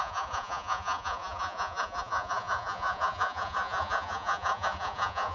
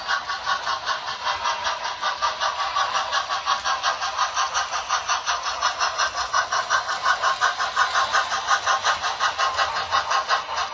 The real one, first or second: second